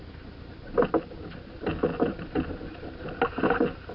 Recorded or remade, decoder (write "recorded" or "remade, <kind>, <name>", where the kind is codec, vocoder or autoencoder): recorded